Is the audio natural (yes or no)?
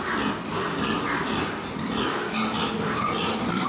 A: yes